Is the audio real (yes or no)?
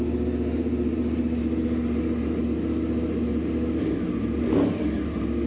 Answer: yes